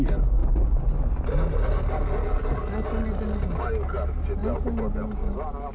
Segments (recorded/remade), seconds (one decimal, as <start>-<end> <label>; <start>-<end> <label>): 0.0-5.7 recorded